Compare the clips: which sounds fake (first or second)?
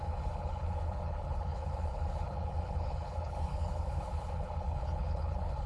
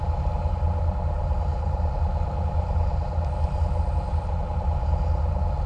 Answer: first